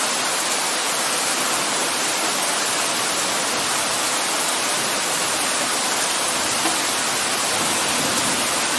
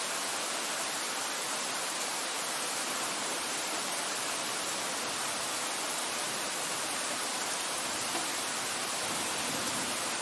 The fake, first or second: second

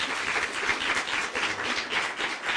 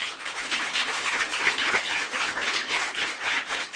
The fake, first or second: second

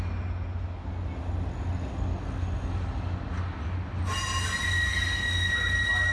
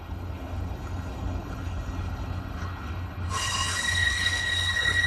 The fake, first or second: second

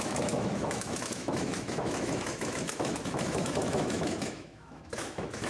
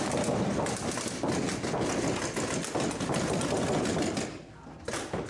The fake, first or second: first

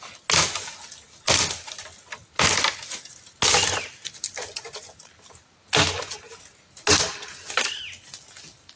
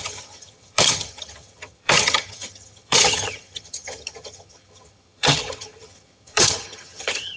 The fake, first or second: second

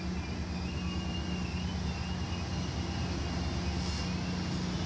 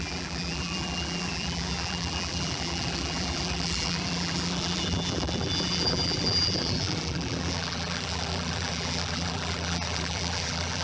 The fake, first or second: second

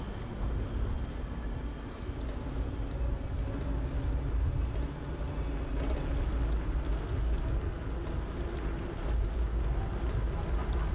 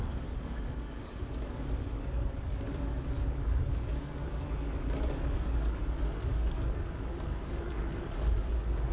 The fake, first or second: second